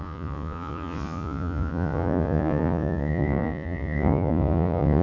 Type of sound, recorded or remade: remade